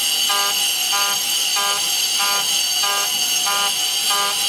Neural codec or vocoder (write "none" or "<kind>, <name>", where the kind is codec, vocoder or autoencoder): none